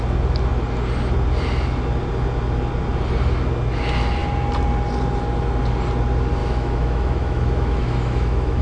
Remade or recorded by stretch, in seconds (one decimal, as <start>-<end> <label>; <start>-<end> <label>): 0.0-6.4 recorded; 6.4-8.6 remade